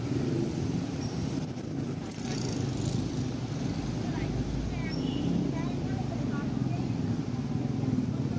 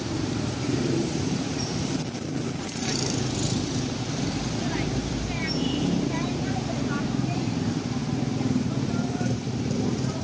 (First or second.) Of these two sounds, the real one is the first